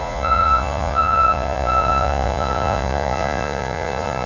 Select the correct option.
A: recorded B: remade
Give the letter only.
B